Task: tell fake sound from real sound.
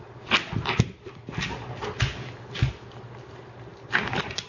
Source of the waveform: real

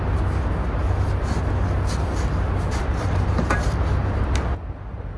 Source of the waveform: real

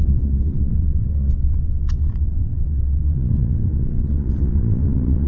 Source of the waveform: fake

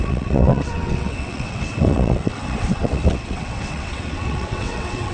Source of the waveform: fake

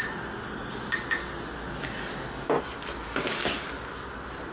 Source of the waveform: real